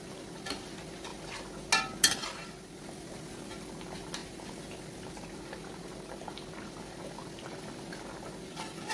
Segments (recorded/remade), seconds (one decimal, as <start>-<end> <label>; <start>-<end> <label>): 0.0-8.9 recorded